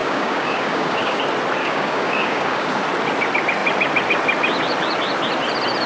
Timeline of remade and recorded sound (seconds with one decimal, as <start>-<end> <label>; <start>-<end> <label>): 0.0-1.2 remade; 1.2-1.6 recorded; 1.6-2.8 remade; 2.8-5.9 recorded